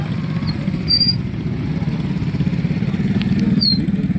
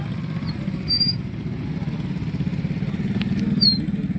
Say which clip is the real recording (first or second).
second